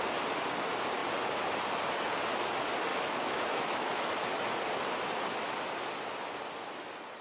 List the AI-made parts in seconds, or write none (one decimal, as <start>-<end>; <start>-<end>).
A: 2.9-4.1